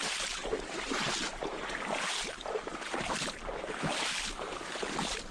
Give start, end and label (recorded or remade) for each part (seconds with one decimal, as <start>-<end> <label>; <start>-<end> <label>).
0.0-5.3 recorded